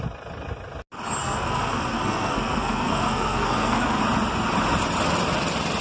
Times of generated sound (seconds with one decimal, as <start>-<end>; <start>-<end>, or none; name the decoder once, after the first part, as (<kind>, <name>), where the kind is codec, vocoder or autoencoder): 1.2-4.0 (codec, SNAC)

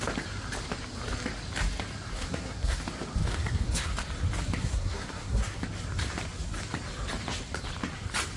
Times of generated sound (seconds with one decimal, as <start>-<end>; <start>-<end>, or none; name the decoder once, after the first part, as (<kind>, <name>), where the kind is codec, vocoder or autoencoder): 2.1-2.8 (codec, SNAC); 3.3-3.9; 4.6-5.6